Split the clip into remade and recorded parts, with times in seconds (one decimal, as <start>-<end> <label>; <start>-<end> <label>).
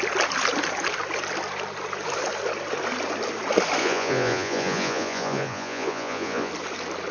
0.0-3.8 recorded; 3.8-6.5 remade; 6.5-7.1 recorded